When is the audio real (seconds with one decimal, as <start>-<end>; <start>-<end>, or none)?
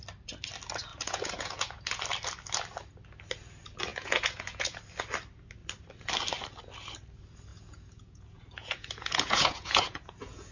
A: 0.0-0.9; 2.0-3.9; 4.8-7.5